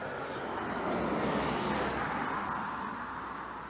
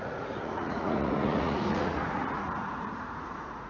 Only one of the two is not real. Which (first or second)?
second